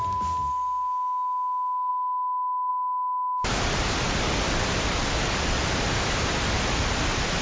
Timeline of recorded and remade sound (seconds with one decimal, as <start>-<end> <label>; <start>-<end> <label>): 0.0-7.4 recorded